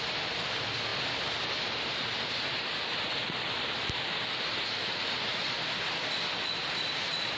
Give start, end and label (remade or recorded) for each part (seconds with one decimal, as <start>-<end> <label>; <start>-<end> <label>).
0.0-7.4 recorded